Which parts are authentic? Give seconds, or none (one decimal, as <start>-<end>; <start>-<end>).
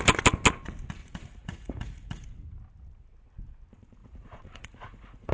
0.0-1.0; 2.2-4.0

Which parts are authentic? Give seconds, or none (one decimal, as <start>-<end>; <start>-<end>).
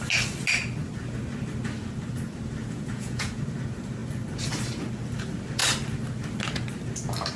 0.0-2.6; 3.4-7.4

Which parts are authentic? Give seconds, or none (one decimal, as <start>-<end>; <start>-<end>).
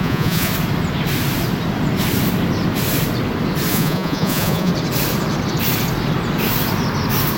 0.5-3.7; 4.7-7.4